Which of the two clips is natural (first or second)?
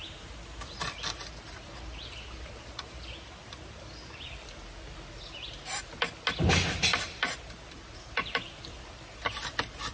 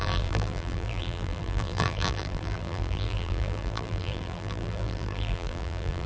first